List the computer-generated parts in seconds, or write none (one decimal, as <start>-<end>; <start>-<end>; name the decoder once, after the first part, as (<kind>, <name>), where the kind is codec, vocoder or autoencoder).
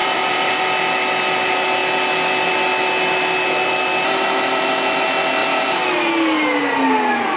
0.0-0.5 (vocoder, BigVGAN v2); 5.4-6.1